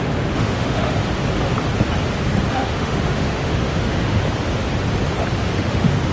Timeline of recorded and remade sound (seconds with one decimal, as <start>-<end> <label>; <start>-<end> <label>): 0.0-1.0 remade; 1.0-2.5 recorded; 2.5-4.2 remade; 4.2-5.4 recorded; 5.4-6.1 remade